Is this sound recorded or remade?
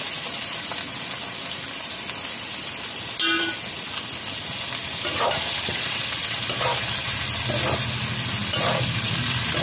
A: recorded